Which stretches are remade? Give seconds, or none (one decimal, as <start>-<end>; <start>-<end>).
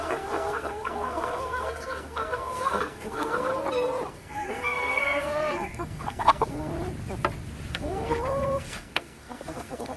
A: 0.0-3.5; 4.1-6.7; 7.7-10.0